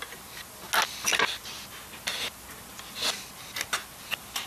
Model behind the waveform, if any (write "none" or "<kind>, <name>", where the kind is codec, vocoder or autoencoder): none